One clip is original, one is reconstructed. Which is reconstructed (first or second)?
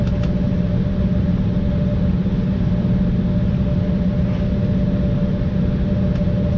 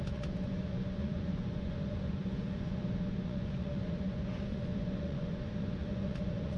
second